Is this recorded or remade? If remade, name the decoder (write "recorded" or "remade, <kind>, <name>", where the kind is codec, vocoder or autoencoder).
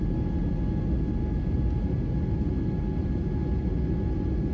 recorded